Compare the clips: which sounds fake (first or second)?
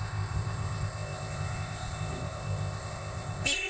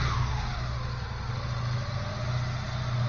first